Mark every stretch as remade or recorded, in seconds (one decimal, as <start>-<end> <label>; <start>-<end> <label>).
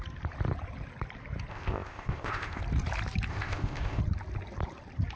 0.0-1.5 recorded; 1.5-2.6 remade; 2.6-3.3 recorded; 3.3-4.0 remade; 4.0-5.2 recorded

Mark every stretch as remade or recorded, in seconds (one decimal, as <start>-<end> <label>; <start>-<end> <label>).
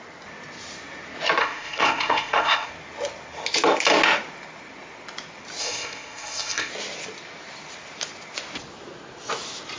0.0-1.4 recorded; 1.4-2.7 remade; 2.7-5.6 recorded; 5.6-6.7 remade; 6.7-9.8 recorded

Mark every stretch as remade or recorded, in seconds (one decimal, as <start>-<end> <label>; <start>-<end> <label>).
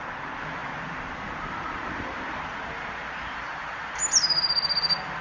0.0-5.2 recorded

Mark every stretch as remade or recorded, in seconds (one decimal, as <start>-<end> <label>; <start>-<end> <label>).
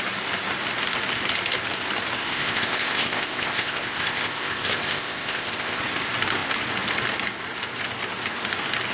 0.0-2.2 recorded; 2.2-5.8 remade; 5.8-8.9 recorded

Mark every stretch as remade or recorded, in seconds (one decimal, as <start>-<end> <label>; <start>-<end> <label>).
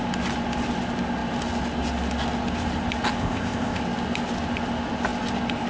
0.0-3.2 recorded; 3.2-3.8 remade; 3.8-5.7 recorded